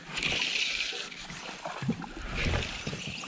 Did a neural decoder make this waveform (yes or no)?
no